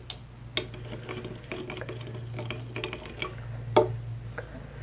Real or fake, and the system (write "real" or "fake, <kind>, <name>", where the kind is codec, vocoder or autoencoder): real